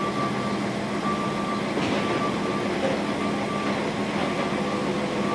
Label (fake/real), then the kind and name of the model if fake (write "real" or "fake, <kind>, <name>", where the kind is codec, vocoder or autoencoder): real